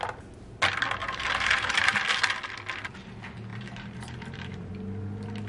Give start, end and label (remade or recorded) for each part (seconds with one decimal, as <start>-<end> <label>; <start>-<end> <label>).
0.0-1.0 recorded; 1.0-2.0 remade; 2.0-3.5 recorded; 3.5-4.7 remade; 4.7-5.5 recorded